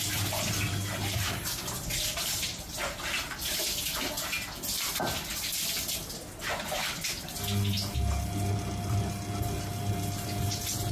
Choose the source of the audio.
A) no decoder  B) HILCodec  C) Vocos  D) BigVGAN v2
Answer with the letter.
A